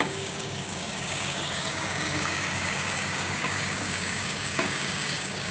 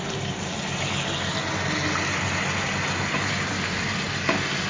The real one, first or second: second